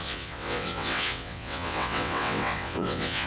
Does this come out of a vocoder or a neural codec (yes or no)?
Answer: yes